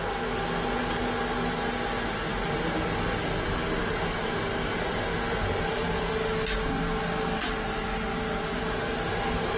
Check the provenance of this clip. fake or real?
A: real